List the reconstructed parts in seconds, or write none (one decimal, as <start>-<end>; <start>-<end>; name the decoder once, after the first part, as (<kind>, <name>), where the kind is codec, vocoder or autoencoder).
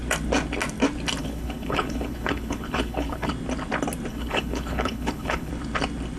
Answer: 1.2-3.3 (codec, HILCodec); 4.1-5.5